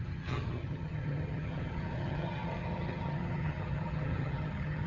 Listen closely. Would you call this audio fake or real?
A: fake